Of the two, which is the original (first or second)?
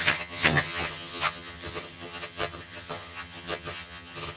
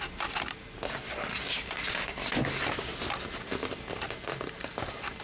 second